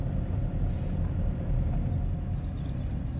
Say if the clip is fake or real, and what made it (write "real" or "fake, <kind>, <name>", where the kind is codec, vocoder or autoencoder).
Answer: real